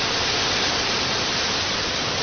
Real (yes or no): yes